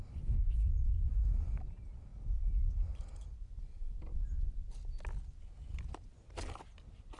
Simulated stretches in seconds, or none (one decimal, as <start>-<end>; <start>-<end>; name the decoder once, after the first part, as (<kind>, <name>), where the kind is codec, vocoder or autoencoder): 0.0-1.1 (vocoder, Vocos)